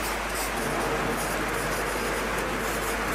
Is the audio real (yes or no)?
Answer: yes